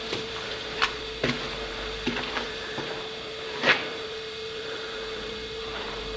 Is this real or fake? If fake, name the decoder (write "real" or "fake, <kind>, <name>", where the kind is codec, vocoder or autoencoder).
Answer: fake, vocoder, BigVGAN v2